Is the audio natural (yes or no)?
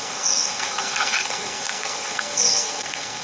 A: no